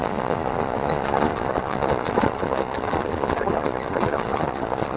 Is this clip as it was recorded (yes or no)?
no